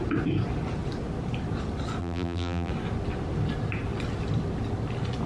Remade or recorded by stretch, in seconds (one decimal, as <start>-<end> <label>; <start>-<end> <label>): 0.0-2.0 recorded; 2.0-2.7 remade; 2.7-5.3 recorded